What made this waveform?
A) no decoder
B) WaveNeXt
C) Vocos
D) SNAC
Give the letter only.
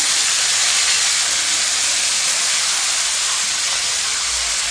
A